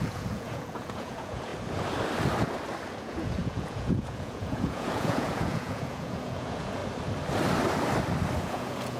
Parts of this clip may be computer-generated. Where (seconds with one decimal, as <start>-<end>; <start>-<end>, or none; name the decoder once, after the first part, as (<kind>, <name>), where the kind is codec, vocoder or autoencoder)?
0.0-1.5 (vocoder, Vocos); 3.0-6.8; 8.4-9.0